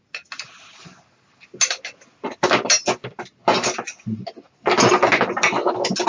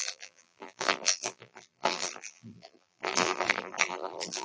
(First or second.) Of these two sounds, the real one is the first